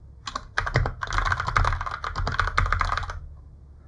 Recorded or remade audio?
recorded